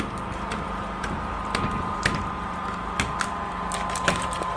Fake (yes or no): no